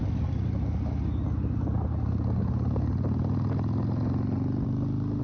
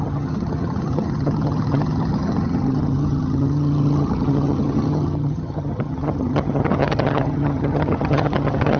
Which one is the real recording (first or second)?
first